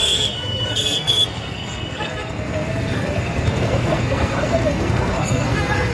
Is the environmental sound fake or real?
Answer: fake